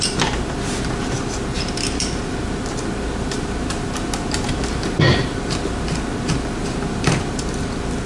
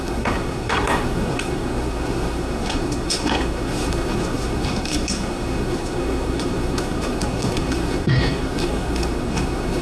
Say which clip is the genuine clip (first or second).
first